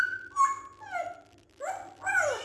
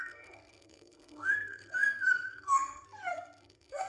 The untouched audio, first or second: first